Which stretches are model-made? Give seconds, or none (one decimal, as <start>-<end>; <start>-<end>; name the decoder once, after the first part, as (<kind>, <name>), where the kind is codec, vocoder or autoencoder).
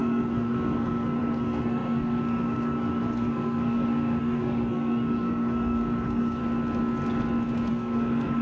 0.0-6.4 (codec, SNAC); 7.7-8.4